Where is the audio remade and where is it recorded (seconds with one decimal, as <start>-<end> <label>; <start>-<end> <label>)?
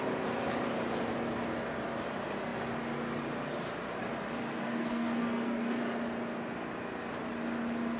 0.0-4.5 recorded; 4.5-5.8 remade; 5.8-8.0 recorded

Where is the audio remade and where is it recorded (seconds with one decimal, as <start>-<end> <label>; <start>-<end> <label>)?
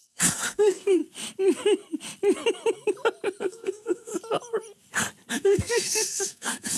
0.0-1.0 remade; 1.0-3.4 recorded; 3.4-4.1 remade; 4.1-5.3 recorded; 5.3-6.8 remade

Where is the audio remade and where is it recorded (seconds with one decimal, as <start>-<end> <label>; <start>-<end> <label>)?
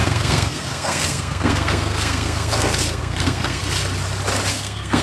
0.0-3.6 remade; 3.6-4.5 recorded; 4.5-5.0 remade